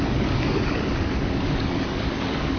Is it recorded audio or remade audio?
remade